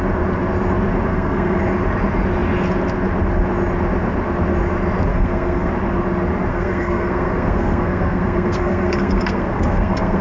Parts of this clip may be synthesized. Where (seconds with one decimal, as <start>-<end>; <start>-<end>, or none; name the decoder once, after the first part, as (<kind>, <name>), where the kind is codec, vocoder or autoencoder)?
1.1-1.6 (codec, SNAC); 5.1-5.7; 6.5-10.2